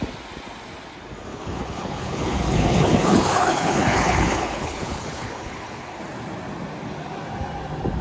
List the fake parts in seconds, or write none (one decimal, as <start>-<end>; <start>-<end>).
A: 1.3-6.0

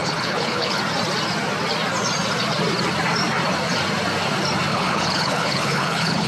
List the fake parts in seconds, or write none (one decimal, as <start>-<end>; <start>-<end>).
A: 0.0-0.8; 4.7-6.3

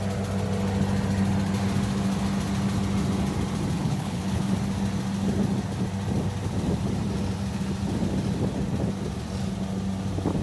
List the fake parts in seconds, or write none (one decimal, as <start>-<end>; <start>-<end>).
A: 3.8-4.4

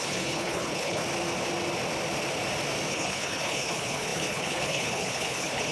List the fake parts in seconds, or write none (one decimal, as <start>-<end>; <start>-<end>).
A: 0.0-1.0; 2.9-5.7

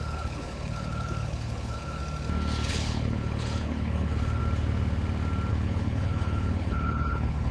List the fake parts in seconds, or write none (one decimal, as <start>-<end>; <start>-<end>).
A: 0.0-2.0; 2.7-4.4; 5.5-7.5

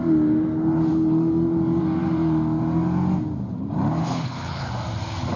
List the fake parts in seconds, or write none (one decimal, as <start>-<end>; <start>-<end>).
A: 4.0-4.7

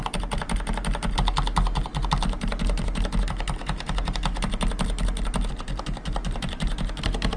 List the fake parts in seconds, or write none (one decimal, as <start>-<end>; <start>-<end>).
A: none